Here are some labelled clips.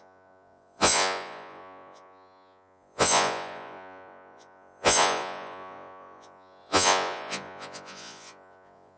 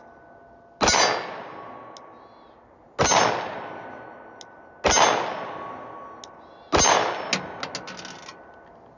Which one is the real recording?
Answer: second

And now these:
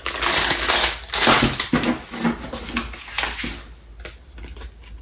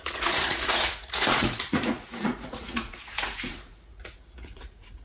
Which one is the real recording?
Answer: first